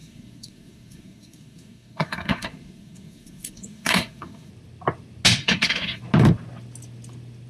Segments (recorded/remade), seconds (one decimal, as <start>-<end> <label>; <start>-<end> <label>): 0.0-4.5 remade; 4.5-5.4 recorded; 5.4-6.0 remade; 6.0-7.5 recorded